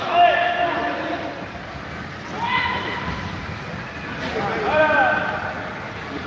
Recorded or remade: recorded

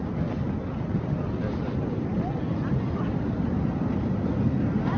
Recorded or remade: recorded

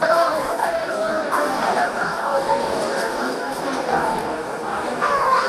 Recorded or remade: remade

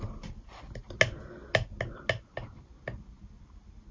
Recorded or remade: recorded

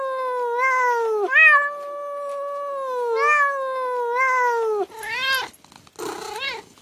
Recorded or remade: recorded